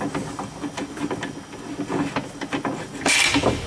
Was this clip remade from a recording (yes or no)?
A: no